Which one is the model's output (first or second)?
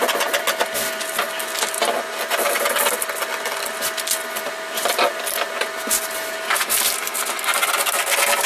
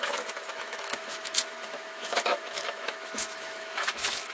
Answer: second